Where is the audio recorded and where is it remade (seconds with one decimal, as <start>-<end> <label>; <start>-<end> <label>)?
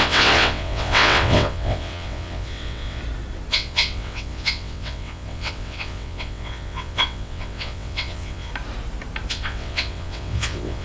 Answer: 0.0-3.0 remade; 3.0-3.5 recorded; 3.5-8.5 remade; 8.5-9.3 recorded; 9.3-10.8 remade